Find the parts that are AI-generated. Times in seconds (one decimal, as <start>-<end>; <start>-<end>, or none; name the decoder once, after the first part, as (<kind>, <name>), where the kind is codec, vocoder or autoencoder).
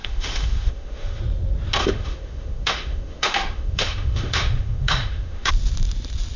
0.0-1.2 (autoencoder, DAC-VAE); 1.8-5.5